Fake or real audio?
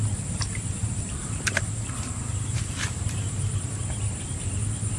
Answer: fake